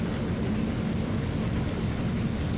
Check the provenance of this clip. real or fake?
real